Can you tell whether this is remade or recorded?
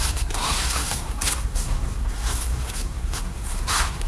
remade